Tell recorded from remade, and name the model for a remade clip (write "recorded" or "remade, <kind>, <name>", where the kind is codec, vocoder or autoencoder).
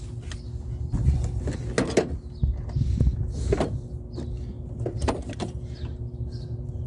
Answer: recorded